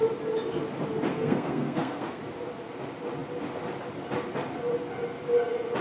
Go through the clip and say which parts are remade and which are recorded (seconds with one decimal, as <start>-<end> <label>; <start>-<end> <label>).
0.0-1.1 recorded; 1.1-2.2 remade; 2.2-5.8 recorded